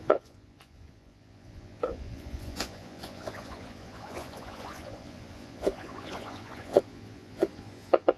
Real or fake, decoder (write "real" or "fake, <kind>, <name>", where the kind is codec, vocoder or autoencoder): fake, vocoder, Vocos